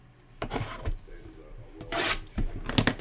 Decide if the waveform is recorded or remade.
recorded